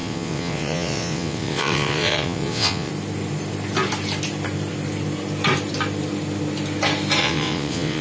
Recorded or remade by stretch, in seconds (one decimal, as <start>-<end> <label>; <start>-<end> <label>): 0.0-2.9 remade; 2.9-7.2 recorded; 7.2-8.0 remade

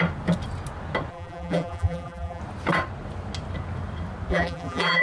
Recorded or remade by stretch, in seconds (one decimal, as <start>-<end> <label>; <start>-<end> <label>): 0.0-1.1 recorded; 1.1-2.4 remade; 2.4-4.3 recorded; 4.3-5.0 remade

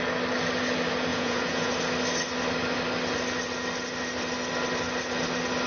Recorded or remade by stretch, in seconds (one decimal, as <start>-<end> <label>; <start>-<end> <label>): 0.0-1.1 recorded; 1.1-1.7 remade; 1.7-5.7 recorded

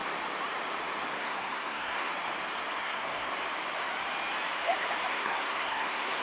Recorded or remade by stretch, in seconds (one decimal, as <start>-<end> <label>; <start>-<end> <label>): 0.0-1.1 recorded; 1.1-2.1 remade; 2.1-2.8 recorded; 2.8-3.3 remade; 3.3-5.1 recorded; 5.1-6.2 remade

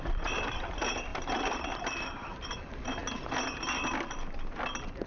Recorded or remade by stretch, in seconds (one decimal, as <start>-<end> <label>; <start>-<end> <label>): 0.0-3.0 remade; 3.0-5.1 recorded

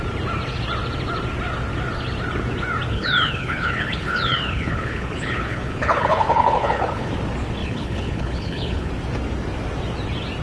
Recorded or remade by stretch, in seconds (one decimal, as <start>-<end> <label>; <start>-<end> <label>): 0.0-2.9 recorded; 2.9-7.1 remade; 7.1-7.6 recorded; 7.6-8.9 remade; 8.9-10.4 recorded

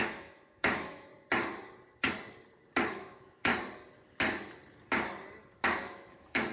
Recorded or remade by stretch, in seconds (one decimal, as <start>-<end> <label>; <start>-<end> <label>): 0.0-1.1 remade; 1.1-2.9 recorded; 2.9-3.5 remade; 3.5-5.8 recorded; 5.8-6.5 remade

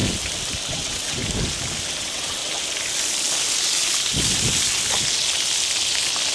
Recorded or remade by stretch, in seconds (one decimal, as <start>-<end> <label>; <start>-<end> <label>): 0.0-0.7 recorded; 0.7-1.2 remade; 1.2-2.0 recorded; 2.0-2.4 remade; 2.4-6.3 recorded